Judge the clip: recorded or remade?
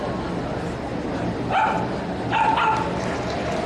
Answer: recorded